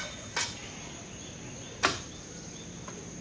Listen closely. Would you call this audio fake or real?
real